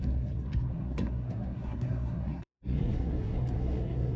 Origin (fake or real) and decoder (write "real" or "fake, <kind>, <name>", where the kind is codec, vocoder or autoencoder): fake, codec, SNAC